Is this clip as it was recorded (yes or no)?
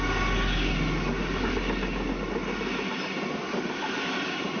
yes